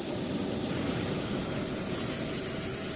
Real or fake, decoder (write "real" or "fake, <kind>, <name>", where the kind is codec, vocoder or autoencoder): real